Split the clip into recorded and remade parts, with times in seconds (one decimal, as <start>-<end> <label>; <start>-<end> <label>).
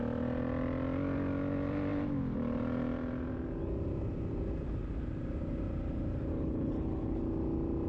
0.0-6.3 recorded; 6.3-7.2 remade; 7.2-7.9 recorded